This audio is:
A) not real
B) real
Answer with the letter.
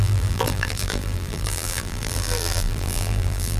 A